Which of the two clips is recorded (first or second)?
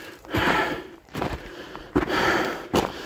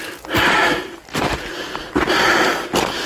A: second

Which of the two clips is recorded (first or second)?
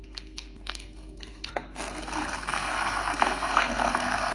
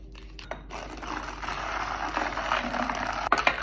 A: second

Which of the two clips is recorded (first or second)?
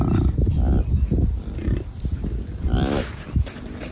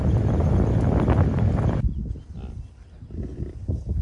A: second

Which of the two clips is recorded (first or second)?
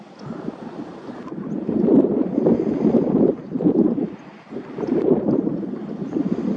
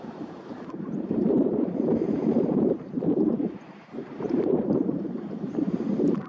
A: first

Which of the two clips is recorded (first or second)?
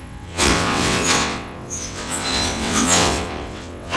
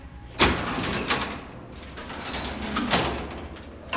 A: second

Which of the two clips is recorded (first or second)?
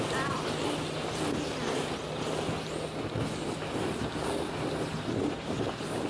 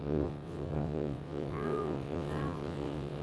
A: first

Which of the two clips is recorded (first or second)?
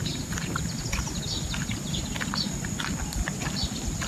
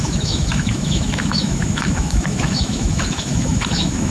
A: first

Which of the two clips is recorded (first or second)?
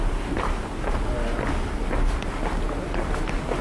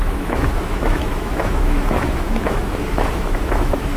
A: first